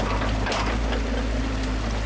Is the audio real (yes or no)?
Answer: yes